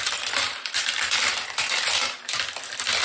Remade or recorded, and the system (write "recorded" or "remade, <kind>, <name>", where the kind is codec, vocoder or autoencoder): remade, vocoder, BigVGAN v2